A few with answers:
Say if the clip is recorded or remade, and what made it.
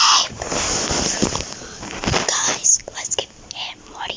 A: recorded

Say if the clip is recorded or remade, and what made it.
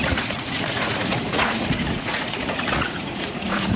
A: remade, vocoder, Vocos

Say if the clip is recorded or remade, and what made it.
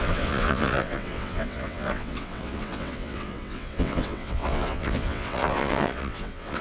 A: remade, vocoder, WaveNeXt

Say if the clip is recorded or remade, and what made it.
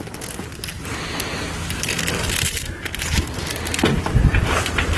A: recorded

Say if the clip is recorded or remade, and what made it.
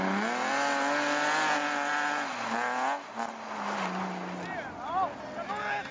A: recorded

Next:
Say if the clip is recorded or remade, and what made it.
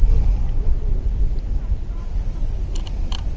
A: recorded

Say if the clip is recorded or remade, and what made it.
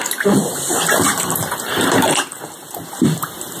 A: remade, vocoder, BigVGAN v2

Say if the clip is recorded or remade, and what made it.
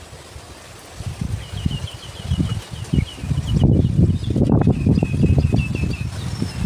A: recorded